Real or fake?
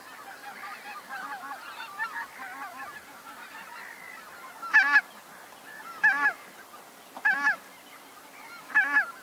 real